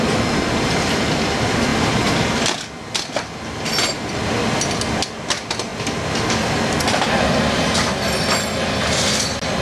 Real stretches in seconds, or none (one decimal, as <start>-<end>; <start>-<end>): 0.0-9.6